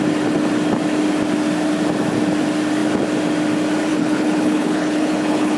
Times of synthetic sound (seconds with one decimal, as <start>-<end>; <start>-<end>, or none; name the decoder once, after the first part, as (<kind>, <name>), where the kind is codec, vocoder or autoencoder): 3.9-5.6 (codec, HILCodec)